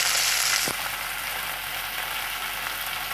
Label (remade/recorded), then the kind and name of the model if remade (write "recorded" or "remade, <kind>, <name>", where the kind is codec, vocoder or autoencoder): recorded